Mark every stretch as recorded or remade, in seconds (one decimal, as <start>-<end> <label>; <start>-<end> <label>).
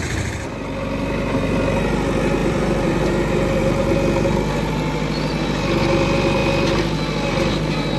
0.0-2.4 recorded; 2.4-3.9 remade; 3.9-8.0 recorded